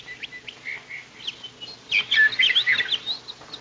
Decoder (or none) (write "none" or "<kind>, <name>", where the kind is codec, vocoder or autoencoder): none